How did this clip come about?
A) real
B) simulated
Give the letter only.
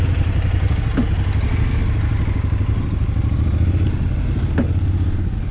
A